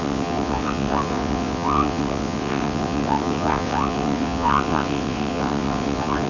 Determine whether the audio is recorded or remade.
remade